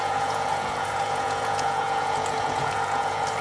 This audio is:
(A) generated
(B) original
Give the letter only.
A